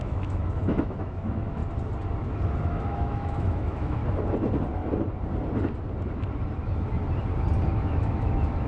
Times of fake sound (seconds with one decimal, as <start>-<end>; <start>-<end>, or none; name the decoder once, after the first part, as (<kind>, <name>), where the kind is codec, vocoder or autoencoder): 0.0-1.6 (autoencoder, DAC-VAE); 2.6-4.0; 7.8-8.7